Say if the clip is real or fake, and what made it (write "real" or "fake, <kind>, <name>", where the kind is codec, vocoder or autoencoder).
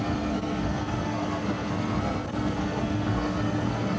fake, codec, SNAC